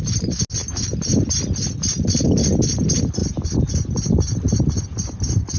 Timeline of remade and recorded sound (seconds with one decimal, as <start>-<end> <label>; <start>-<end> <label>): 0.0-5.6 recorded